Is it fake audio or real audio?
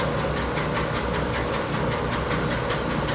real